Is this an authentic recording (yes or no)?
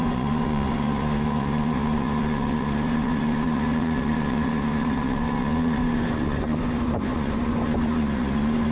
no